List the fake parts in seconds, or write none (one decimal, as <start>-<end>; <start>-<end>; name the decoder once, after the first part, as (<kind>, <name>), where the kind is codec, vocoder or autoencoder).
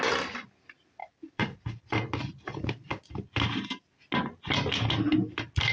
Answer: 1.0-1.6 (vocoder, BigVGAN v2)